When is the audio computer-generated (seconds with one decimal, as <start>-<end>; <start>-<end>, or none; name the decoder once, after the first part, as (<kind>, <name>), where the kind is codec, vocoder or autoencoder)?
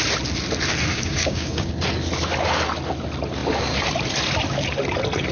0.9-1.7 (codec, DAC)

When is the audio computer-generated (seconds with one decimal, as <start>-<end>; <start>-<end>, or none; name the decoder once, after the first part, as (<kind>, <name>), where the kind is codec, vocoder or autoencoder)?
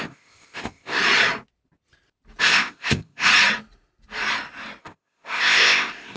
0.0-1.0 (codec, ZipCodec); 2.4-3.3; 4.8-6.2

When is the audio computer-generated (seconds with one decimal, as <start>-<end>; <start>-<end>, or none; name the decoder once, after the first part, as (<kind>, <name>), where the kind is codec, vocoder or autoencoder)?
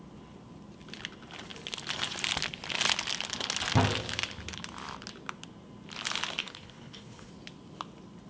6.4-7.3 (codec, HILCodec)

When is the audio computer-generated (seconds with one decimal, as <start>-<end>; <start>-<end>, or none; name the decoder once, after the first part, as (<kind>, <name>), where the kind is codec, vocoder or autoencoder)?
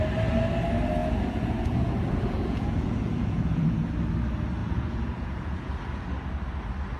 1.0-3.9 (vocoder, Vocos); 4.6-5.7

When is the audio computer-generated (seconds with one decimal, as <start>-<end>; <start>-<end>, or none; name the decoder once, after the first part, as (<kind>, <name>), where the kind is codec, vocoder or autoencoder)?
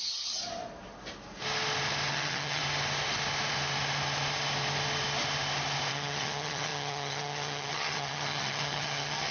0.0-0.4 (vocoder, HiFi-GAN); 2.1-2.6; 5.9-9.3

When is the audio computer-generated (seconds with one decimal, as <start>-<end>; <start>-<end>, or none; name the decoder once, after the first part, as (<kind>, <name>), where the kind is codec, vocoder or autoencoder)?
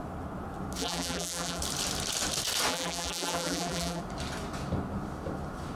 0.8-1.6 (vocoder, BigVGAN v2); 2.7-4.0